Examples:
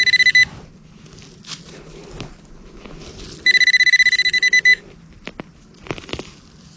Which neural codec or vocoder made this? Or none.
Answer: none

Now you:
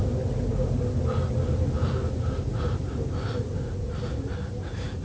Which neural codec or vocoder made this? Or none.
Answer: none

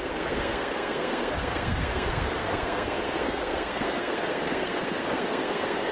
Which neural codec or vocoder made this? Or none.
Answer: codec, SNAC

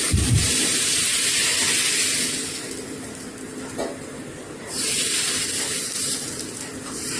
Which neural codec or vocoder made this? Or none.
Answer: none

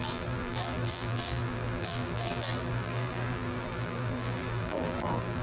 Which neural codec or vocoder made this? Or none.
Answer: vocoder, BigVGAN v2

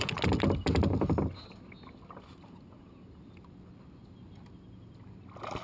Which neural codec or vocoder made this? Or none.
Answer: none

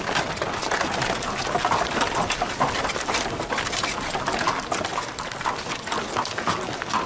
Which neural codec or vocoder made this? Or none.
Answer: none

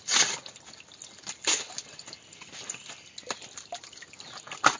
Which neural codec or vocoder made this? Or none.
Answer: none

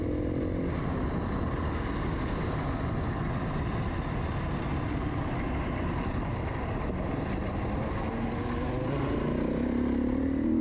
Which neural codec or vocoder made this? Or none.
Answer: none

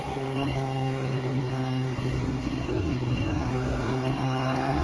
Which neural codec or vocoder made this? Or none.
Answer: codec, SNAC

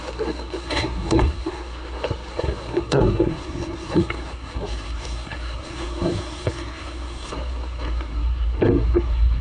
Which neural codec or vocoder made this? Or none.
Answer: codec, SNAC